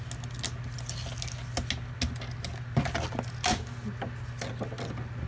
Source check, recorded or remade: recorded